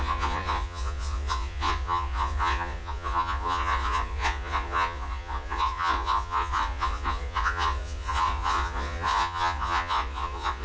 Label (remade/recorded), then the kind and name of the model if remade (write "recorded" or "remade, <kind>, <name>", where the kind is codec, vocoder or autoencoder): remade, vocoder, Vocos